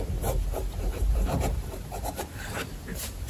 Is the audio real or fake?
fake